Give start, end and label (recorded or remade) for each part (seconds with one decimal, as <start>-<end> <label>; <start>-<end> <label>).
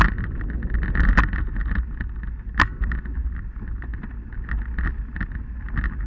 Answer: 0.0-6.1 recorded